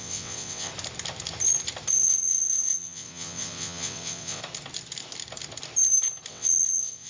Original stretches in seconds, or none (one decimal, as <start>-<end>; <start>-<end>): 0.7-1.9; 4.4-6.3